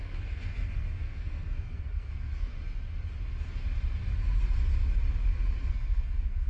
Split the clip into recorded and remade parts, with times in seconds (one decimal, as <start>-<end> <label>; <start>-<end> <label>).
0.0-2.5 remade; 2.5-5.7 recorded; 5.7-6.5 remade